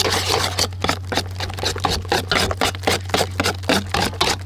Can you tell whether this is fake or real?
real